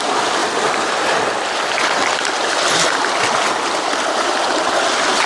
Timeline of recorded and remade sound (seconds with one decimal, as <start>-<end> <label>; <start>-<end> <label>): 0.0-5.3 recorded